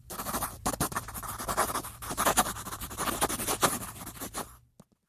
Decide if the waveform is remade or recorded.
recorded